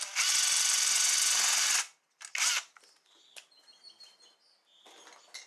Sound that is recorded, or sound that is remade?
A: recorded